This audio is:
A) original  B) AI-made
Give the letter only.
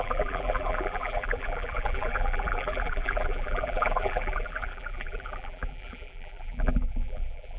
B